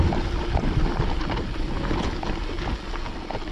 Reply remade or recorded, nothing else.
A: recorded